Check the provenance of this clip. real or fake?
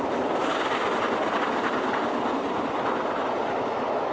real